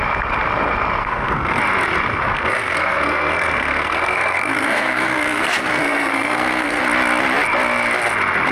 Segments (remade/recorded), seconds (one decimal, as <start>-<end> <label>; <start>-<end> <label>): 0.0-1.0 recorded; 1.0-1.6 remade; 1.6-2.1 recorded; 2.1-6.8 remade; 6.8-8.5 recorded

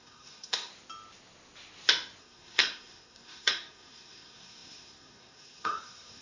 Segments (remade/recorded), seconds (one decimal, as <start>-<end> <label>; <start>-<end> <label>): 0.0-0.7 remade; 0.7-2.2 recorded; 2.2-6.2 remade

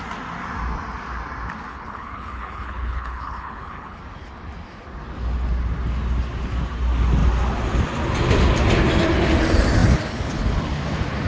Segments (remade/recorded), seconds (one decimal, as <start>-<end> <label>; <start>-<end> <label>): 0.0-1.7 recorded; 1.7-4.0 remade; 4.0-11.3 recorded

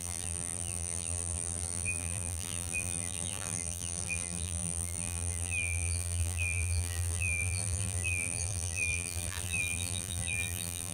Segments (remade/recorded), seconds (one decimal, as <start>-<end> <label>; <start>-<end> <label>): 0.0-10.9 remade